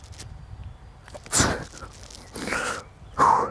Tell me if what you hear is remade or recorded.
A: recorded